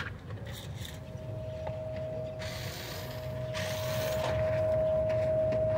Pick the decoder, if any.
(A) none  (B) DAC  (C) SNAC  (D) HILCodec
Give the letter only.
A